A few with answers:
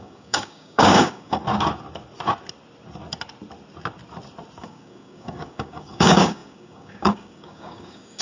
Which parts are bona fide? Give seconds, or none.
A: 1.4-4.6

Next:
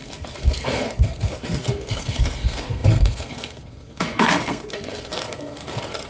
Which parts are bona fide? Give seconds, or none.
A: none

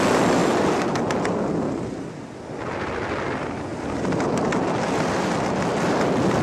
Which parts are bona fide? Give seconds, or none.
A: 0.0-6.4